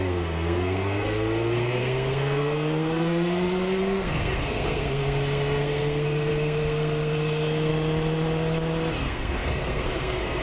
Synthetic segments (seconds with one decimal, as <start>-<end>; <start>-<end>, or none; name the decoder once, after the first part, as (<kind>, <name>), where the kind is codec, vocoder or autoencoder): 0.0-7.7 (codec, SNAC); 9.0-10.4